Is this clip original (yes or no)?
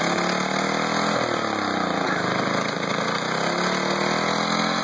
yes